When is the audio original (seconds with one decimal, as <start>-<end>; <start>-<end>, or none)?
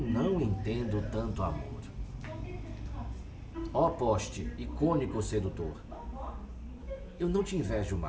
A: 0.0-6.8; 7.4-8.1